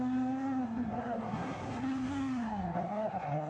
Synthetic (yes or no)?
yes